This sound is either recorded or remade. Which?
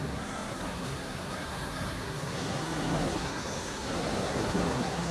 remade